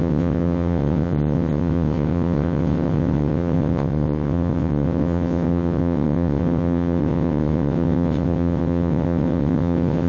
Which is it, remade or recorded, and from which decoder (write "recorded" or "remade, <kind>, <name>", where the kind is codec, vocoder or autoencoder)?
remade, vocoder, WaveNeXt